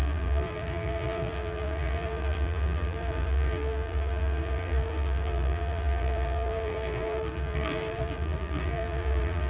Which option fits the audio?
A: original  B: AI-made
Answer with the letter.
B